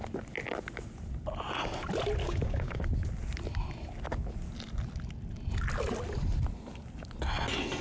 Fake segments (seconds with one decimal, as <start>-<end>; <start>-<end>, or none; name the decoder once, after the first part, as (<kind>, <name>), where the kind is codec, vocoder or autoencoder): 2.2-2.8 (codec, DAC)